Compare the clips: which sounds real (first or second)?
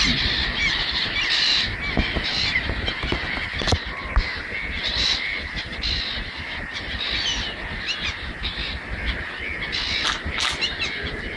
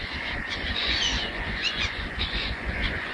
first